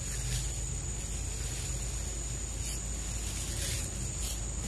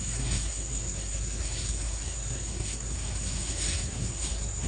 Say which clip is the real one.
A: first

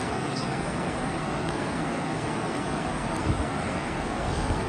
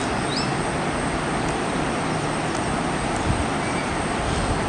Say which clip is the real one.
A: second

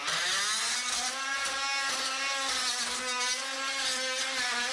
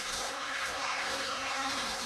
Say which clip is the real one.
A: first